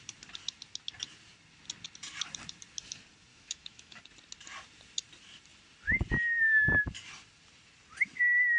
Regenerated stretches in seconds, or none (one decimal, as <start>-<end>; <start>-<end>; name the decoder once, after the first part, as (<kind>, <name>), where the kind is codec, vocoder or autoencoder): 3.3-4.0 (autoencoder, DAC-VAE)